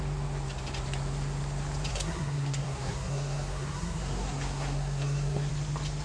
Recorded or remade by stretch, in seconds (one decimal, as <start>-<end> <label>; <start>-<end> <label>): 0.0-1.9 recorded; 1.9-5.5 remade; 5.5-6.0 recorded